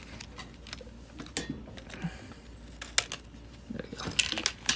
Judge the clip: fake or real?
real